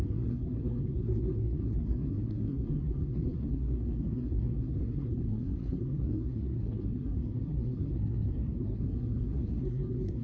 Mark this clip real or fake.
fake